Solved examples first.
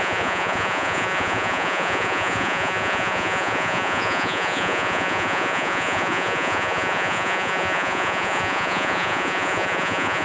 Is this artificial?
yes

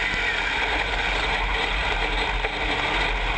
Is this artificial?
no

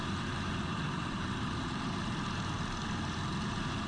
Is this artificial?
yes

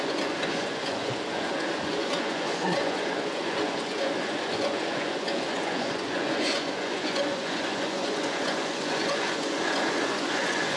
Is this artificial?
yes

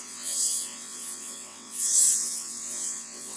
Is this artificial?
yes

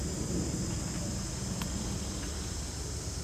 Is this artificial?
no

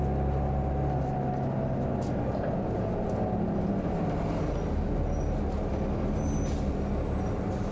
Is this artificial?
no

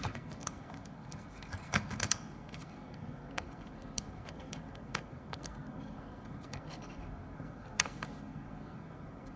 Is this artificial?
yes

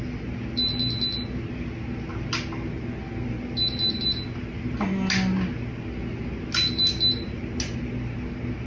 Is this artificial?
no